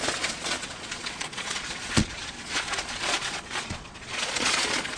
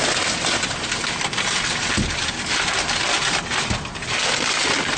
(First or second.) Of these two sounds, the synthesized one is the first